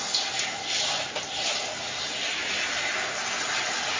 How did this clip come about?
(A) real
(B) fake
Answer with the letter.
A